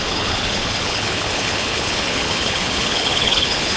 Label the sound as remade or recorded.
remade